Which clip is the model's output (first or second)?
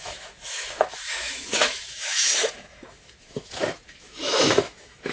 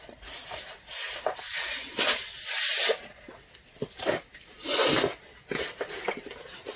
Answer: first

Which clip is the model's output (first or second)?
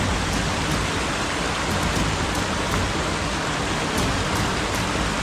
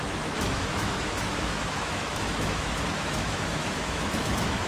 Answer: second